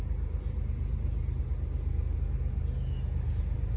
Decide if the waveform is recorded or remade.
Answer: recorded